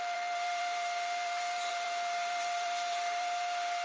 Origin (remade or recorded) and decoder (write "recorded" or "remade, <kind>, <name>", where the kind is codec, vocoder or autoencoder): remade, vocoder, BigVGAN v2